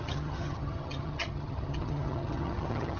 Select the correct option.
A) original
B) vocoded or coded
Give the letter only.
B